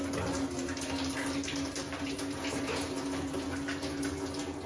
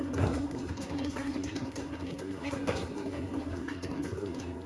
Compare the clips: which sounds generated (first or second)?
second